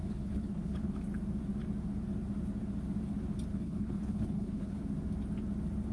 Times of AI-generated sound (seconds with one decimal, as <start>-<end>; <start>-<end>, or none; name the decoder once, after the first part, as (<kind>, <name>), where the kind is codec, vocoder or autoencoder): 0.0-0.9 (codec, HILCodec); 3.5-4.8